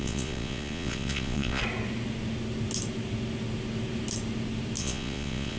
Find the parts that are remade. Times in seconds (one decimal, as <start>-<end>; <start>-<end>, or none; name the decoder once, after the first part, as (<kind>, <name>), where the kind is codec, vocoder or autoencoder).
0.0-1.6 (vocoder, Vocos); 4.8-5.6